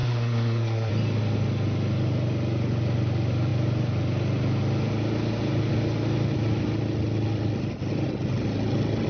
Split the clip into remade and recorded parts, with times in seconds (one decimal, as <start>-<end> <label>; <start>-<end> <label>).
0.0-0.9 remade; 0.9-9.1 recorded